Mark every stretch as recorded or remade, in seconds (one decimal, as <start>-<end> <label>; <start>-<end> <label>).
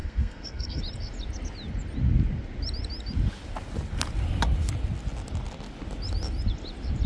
0.0-0.8 remade; 0.8-7.1 recorded